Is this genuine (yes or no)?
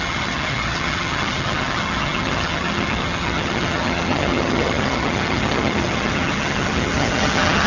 no